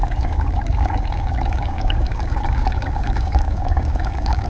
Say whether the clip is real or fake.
fake